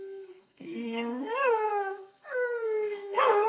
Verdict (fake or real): fake